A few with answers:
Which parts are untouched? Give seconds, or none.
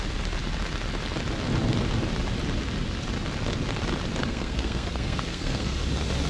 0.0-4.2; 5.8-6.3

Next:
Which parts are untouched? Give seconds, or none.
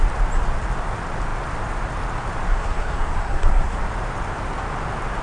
0.0-2.5; 3.8-5.2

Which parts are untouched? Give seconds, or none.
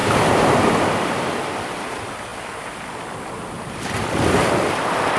0.0-5.2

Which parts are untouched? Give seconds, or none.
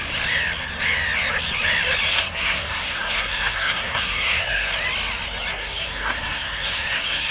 0.0-2.1; 4.7-5.5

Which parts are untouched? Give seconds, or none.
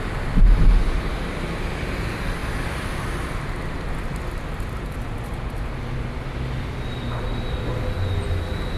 0.0-8.8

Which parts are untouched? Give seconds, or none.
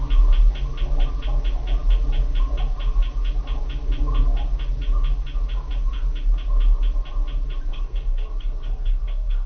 0.0-7.7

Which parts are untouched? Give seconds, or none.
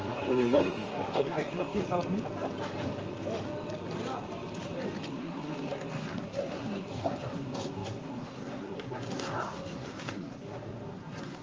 1.8-5.1